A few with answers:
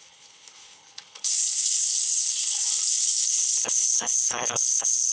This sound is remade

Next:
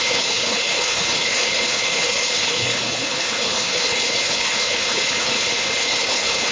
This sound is remade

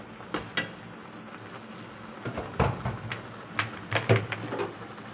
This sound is recorded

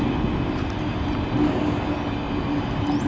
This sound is recorded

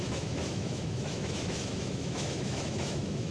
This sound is remade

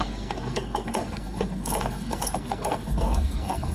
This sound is remade